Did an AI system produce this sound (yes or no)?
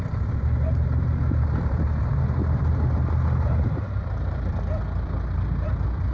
yes